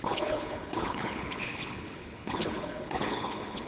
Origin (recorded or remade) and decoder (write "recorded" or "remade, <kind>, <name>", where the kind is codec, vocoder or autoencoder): remade, codec, HILCodec